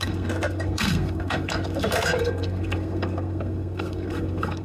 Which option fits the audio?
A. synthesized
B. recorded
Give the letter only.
A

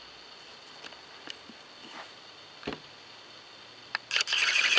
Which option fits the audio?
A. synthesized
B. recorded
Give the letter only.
B